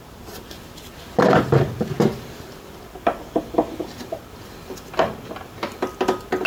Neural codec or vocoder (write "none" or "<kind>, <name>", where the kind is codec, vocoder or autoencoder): none